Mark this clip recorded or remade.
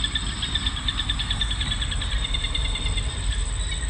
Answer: recorded